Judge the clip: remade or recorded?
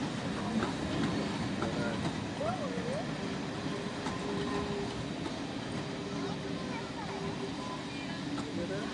recorded